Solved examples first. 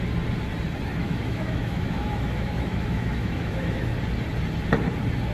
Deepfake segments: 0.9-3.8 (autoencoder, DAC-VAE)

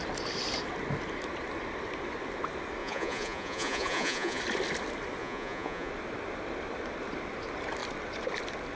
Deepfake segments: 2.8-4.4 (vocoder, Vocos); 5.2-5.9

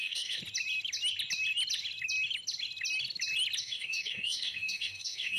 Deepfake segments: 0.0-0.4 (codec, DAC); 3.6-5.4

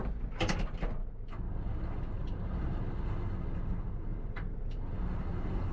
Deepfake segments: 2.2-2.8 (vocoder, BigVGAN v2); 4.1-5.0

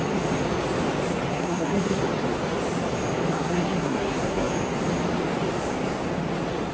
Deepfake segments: 1.3-2.0 (codec, SNAC); 3.3-4.5

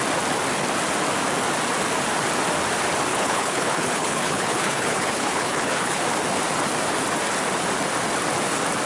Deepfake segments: 3.1-6.0 (codec, HILCodec)

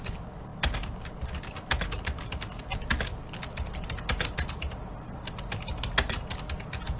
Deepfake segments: none